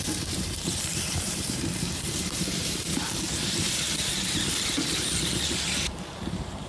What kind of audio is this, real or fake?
fake